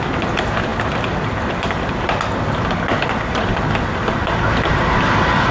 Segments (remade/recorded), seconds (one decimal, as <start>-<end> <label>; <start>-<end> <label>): 0.0-5.5 recorded